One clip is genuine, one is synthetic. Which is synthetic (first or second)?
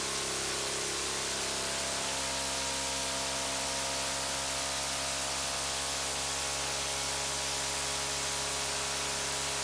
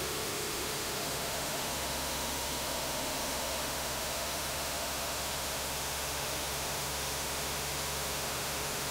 second